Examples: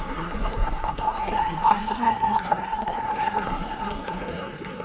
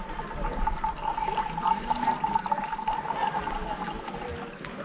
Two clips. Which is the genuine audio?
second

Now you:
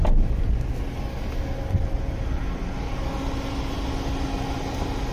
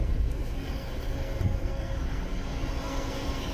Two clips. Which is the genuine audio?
first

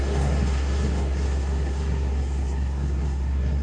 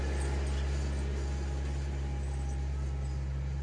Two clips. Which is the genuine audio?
second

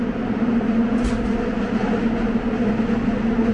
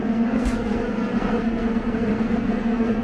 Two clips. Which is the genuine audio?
first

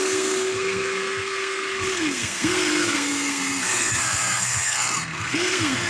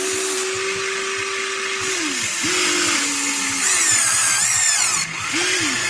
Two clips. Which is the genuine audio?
second